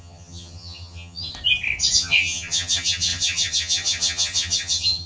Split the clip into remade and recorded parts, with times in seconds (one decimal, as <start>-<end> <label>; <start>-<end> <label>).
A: 0.0-1.3 remade; 1.3-2.0 recorded; 2.0-5.1 remade